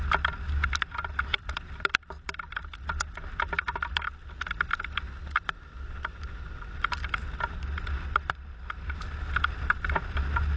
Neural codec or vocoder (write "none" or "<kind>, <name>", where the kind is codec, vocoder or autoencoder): none